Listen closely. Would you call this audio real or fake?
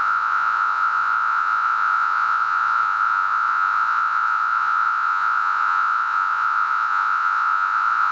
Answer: fake